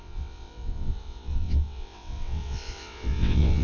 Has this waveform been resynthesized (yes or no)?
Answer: yes